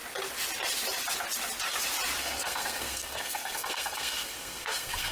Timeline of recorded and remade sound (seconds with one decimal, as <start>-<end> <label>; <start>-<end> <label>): 0.0-2.2 recorded; 2.2-5.1 remade